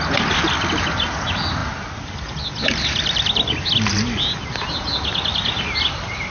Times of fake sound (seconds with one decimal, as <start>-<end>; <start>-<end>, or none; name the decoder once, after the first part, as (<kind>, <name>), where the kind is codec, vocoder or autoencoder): none